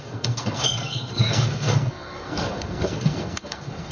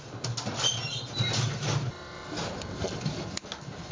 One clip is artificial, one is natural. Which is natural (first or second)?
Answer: second